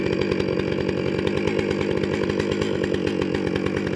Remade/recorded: recorded